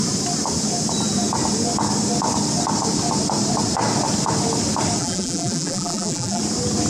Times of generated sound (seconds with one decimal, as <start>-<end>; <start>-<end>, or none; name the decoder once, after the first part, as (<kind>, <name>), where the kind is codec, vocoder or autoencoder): 5.0-6.4 (vocoder, BigVGAN v2)